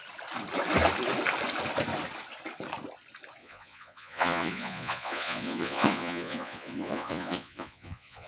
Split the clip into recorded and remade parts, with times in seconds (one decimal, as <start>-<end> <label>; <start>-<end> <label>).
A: 0.0-3.4 recorded; 3.4-8.3 remade